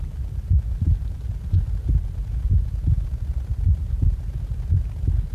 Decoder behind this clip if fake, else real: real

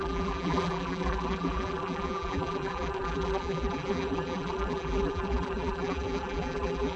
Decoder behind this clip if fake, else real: fake, vocoder, BigVGAN v2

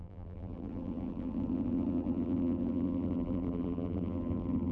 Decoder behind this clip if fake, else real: fake, vocoder, BigVGAN v2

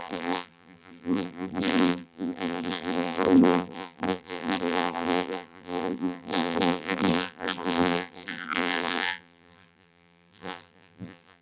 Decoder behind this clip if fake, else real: fake, vocoder, BigVGAN v2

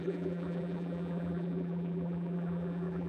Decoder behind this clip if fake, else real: fake, vocoder, BigVGAN v2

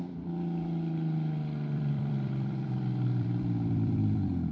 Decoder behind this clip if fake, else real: fake, vocoder, BigVGAN v2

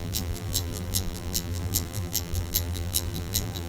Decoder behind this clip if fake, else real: fake, vocoder, BigVGAN v2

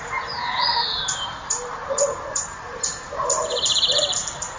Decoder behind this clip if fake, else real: fake, vocoder, BigVGAN v2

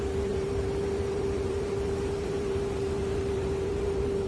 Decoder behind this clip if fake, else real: fake, vocoder, BigVGAN v2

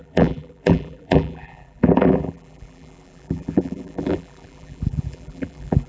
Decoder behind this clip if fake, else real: fake, vocoder, BigVGAN v2